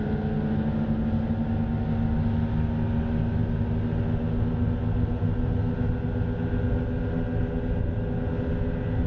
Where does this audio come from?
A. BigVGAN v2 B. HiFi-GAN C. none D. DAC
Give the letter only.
C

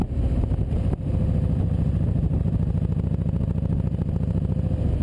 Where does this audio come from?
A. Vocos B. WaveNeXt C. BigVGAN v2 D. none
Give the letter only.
D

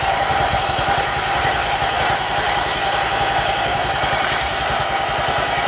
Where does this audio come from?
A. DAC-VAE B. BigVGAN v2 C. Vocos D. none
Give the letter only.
B